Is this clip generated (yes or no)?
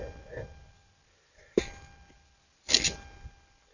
no